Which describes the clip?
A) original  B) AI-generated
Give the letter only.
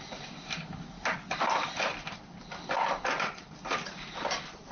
A